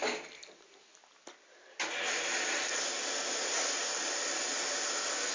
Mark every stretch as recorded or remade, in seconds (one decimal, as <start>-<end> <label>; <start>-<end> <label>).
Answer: 0.0-5.3 recorded